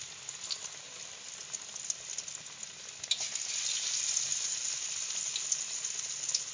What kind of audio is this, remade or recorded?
recorded